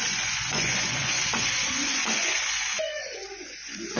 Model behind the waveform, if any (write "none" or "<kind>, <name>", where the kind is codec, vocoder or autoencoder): vocoder, Vocos